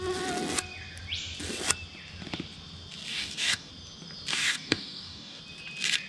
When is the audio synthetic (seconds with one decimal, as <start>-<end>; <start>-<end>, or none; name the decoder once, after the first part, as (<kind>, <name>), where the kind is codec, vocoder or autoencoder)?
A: 3.1-3.7 (codec, DAC); 4.3-5.4